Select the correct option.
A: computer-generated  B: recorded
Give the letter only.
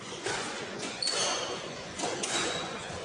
A